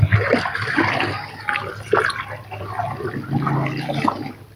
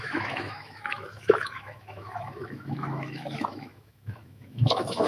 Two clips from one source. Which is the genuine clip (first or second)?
first